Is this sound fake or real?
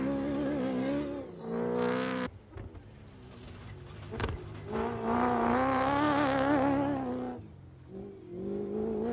real